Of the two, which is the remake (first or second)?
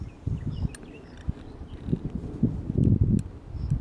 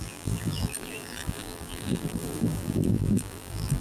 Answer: second